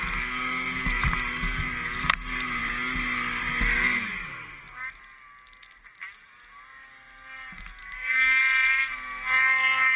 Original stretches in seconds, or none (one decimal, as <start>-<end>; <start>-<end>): 0.0-7.8; 8.4-10.0